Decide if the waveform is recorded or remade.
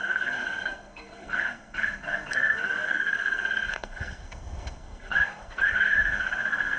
remade